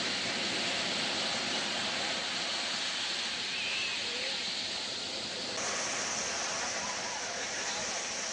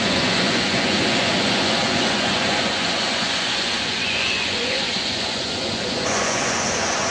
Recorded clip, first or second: first